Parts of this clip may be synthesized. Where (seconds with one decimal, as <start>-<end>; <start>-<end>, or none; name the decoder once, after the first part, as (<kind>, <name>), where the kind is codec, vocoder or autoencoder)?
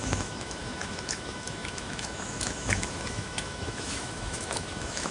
0.0-5.1 (autoencoder, DAC-VAE)